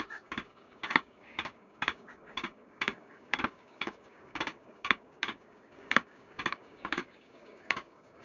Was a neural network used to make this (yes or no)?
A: yes